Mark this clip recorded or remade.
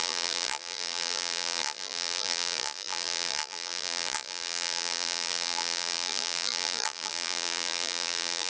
remade